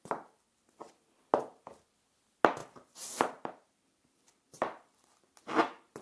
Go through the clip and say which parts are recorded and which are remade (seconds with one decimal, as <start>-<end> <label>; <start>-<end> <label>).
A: 0.0-2.6 recorded; 2.6-5.4 remade; 5.4-6.0 recorded